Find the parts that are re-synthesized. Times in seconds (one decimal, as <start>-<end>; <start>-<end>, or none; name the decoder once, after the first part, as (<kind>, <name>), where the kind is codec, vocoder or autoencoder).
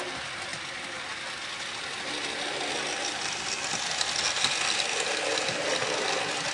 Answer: none